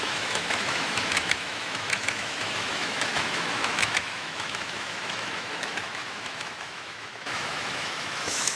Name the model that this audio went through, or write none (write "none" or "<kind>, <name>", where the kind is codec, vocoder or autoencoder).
autoencoder, DAC-VAE